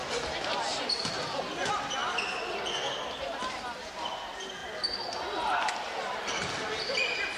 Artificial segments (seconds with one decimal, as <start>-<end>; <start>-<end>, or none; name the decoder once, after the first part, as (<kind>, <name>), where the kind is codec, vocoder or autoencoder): none